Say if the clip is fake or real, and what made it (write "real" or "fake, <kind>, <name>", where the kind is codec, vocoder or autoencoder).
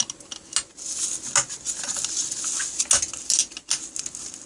real